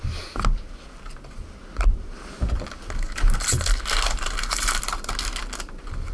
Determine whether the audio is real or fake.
real